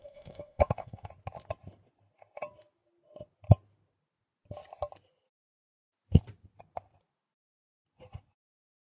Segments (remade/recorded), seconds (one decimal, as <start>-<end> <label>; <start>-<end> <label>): 0.0-1.1 remade; 1.1-8.9 recorded